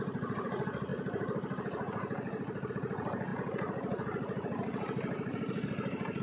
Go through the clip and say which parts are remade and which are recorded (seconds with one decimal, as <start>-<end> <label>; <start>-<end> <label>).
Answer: 0.0-6.2 recorded

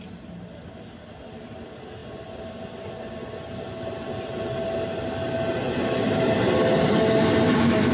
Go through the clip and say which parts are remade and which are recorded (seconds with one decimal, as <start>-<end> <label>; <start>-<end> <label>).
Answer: 0.0-7.9 recorded

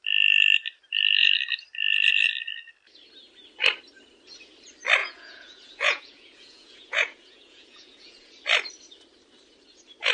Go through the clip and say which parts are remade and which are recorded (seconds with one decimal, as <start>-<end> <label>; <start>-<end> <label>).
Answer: 0.0-5.0 recorded; 5.0-8.3 remade; 8.3-10.1 recorded

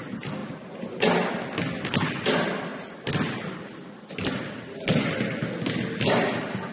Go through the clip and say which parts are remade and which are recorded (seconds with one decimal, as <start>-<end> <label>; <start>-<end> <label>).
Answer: 0.0-6.7 recorded

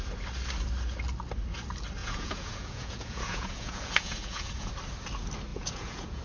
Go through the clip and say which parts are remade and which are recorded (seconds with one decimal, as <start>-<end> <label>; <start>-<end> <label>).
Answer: 0.0-2.0 recorded; 2.0-4.7 remade; 4.7-5.5 recorded; 5.5-6.2 remade

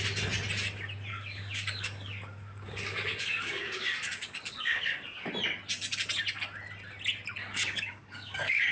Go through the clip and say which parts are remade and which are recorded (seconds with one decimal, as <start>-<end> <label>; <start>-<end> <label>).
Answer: 0.0-1.1 recorded; 1.1-5.3 remade; 5.3-7.4 recorded; 7.4-8.7 remade

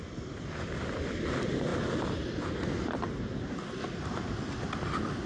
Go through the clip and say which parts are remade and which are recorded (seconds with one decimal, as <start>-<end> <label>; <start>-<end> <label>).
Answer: 0.0-5.3 recorded

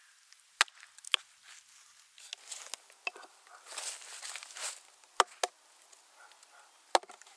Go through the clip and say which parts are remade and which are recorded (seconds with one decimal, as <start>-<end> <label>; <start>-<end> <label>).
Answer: 0.0-7.4 recorded